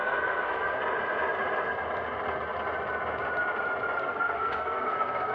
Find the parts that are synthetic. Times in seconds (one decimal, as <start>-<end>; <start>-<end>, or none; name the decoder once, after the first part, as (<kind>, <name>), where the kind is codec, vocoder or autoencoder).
0.0-0.8 (codec, SNAC); 4.0-5.3